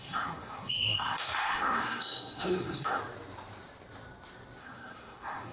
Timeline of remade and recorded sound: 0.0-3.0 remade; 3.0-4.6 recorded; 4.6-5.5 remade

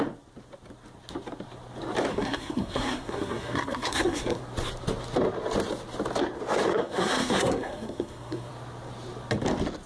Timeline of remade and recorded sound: 0.0-2.1 recorded; 2.1-4.4 remade; 4.4-6.7 recorded; 6.7-8.5 remade; 8.5-9.9 recorded

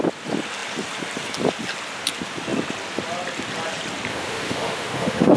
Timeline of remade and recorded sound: 0.0-4.1 recorded; 4.1-5.4 remade